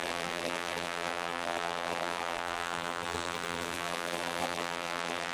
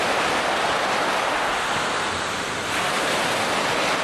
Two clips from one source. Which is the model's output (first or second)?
first